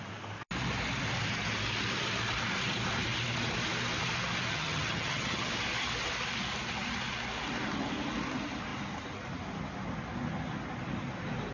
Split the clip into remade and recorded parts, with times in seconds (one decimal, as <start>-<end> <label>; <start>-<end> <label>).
0.0-4.5 recorded; 4.5-5.5 remade; 5.5-11.5 recorded